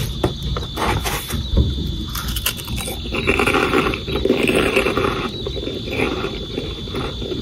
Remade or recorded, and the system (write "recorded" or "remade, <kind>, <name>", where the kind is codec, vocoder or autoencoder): recorded